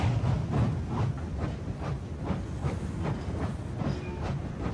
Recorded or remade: recorded